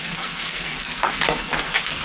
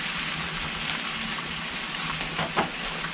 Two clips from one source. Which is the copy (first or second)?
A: first